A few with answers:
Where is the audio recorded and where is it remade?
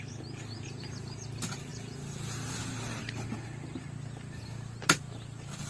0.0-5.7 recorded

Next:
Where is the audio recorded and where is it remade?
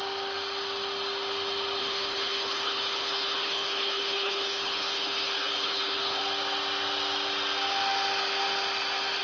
0.0-1.8 recorded; 1.8-6.2 remade; 6.2-9.2 recorded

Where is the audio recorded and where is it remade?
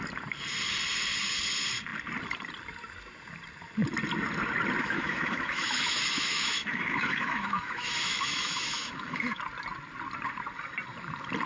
0.0-4.8 recorded; 4.8-9.4 remade; 9.4-11.5 recorded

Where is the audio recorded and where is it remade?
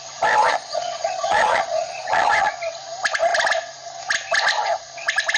0.0-0.4 recorded; 0.4-2.6 remade; 2.6-5.4 recorded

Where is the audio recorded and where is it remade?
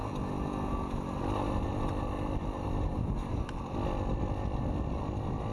0.0-5.5 recorded